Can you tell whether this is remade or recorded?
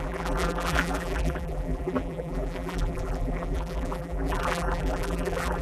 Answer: remade